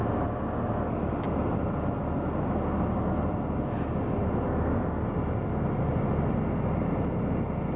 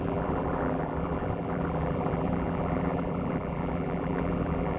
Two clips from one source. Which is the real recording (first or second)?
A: first